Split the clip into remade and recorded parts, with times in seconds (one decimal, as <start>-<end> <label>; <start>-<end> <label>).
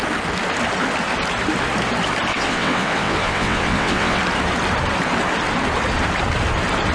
0.0-2.3 recorded; 2.3-4.2 remade; 4.2-6.9 recorded